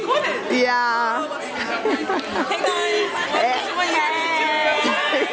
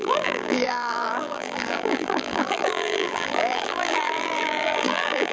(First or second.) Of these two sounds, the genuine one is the first